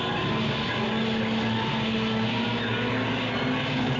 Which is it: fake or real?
real